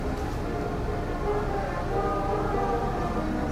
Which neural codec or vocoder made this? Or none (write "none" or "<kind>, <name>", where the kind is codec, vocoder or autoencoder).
none